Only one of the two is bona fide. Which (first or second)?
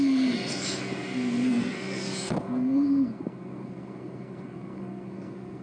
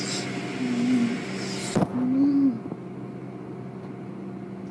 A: second